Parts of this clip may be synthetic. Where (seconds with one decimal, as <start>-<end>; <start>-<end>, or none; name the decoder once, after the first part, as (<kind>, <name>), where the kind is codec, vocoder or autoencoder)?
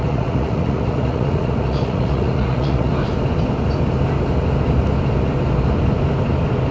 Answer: 0.0-2.9 (vocoder, Vocos)